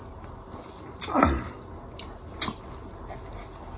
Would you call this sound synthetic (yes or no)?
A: no